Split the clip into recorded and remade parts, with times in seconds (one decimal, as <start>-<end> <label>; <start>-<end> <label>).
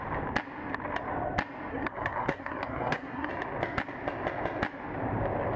0.0-1.7 recorded; 1.7-3.3 remade; 3.3-5.6 recorded